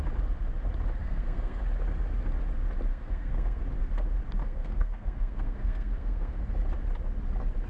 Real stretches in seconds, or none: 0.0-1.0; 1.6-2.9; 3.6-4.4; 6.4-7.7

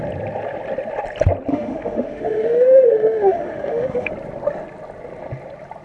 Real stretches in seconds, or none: 0.0-1.5; 4.1-5.8

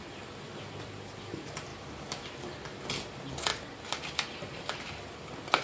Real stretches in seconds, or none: 0.0-1.7; 2.4-5.6

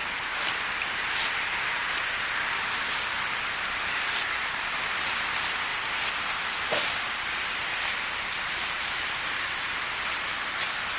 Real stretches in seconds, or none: 0.0-0.6; 5.7-6.7